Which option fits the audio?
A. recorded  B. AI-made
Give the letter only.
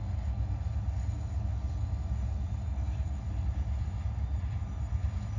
A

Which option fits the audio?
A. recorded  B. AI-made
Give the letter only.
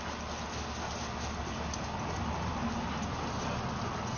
A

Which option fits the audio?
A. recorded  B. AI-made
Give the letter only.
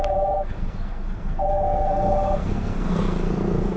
B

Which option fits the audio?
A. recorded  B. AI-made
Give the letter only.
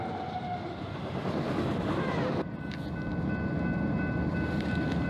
A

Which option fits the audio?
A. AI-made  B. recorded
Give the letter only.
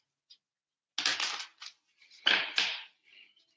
B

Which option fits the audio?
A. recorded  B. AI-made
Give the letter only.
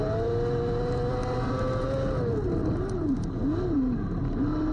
A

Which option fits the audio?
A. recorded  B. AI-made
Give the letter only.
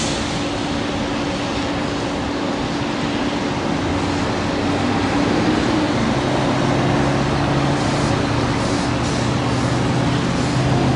A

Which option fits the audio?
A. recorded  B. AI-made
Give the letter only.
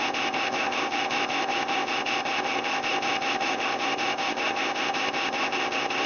B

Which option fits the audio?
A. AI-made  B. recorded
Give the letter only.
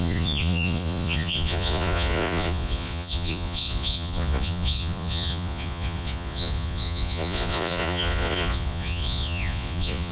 A